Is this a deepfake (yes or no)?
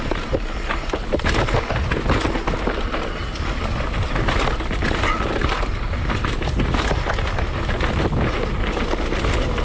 no